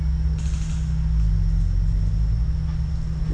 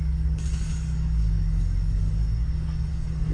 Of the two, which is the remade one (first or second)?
second